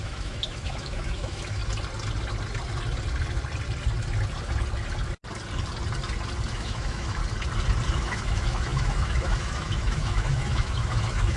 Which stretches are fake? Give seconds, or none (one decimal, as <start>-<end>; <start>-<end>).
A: 0.0-1.6; 6.5-7.2; 7.9-11.4